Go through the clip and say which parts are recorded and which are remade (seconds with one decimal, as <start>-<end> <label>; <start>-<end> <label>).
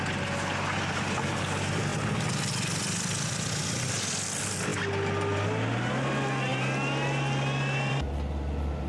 0.0-8.9 recorded